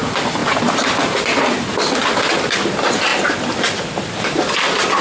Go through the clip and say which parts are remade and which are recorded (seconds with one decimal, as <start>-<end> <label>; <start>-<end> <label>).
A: 0.0-5.0 recorded